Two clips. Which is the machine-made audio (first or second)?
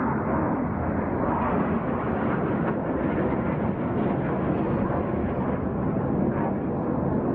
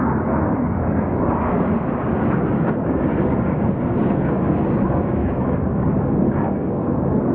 second